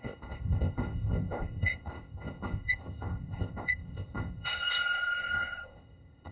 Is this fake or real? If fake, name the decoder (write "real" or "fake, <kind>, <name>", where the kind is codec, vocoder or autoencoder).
fake, codec, ZipCodec